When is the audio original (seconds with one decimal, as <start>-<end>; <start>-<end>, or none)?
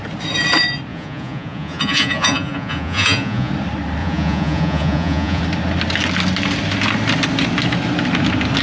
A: 0.0-0.9; 3.5-4.0; 5.4-8.6